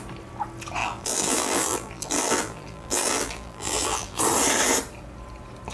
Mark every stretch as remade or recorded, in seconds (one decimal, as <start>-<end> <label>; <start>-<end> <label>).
0.0-0.8 recorded; 0.8-4.2 remade; 4.2-5.7 recorded